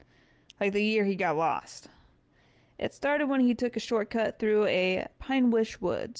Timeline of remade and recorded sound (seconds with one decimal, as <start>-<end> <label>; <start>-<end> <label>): 0.0-1.7 remade; 1.7-6.2 recorded